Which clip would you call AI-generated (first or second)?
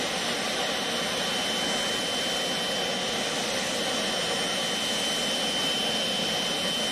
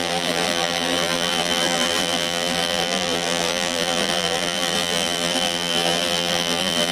second